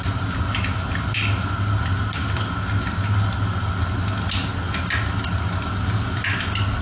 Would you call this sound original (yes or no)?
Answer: yes